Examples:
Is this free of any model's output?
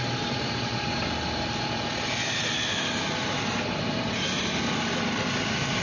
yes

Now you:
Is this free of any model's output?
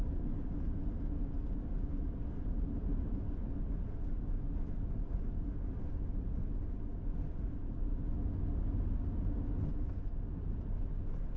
yes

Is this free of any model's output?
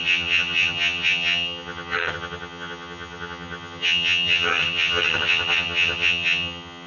no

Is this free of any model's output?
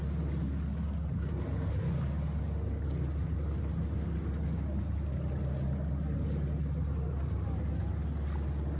yes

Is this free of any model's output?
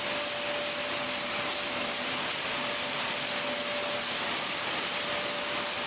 yes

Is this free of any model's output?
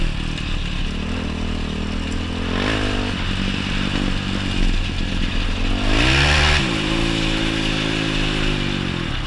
yes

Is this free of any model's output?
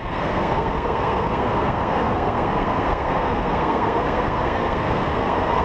no